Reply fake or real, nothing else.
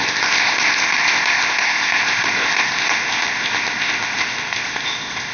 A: fake